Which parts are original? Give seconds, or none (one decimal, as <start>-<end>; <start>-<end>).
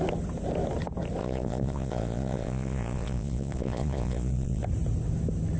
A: 0.0-1.2; 4.6-5.6